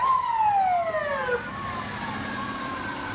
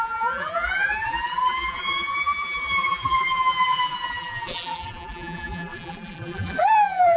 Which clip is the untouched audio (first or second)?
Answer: first